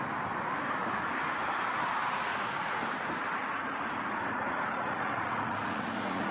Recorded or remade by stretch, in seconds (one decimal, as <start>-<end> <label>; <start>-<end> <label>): 0.0-2.3 recorded; 2.3-2.9 remade; 2.9-3.4 recorded; 3.4-6.3 remade